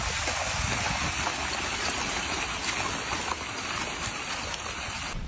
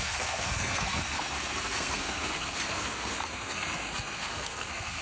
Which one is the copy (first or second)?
second